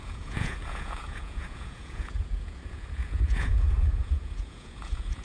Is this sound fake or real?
fake